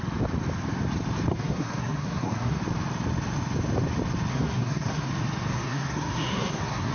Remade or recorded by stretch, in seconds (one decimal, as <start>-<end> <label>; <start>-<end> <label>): 0.0-1.3 recorded; 1.3-2.6 remade; 2.6-4.3 recorded; 4.3-5.1 remade; 5.1-5.5 recorded; 5.5-6.9 remade